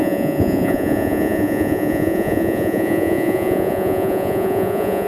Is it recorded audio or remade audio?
remade